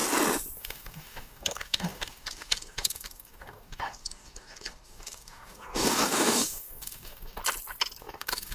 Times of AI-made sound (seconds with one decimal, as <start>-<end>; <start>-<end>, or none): 0.6-7.4; 8.0-8.5